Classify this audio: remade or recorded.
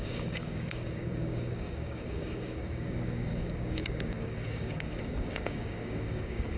remade